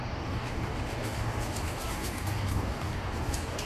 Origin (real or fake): fake